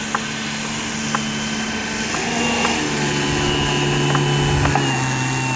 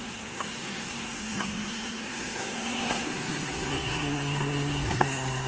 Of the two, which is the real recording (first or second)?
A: first